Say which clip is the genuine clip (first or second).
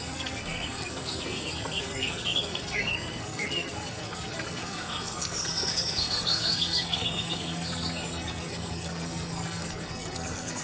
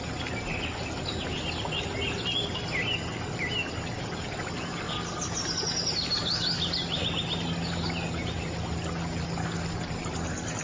second